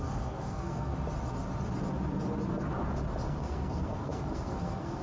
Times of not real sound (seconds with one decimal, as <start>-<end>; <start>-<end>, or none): 0.0-0.9; 3.3-5.0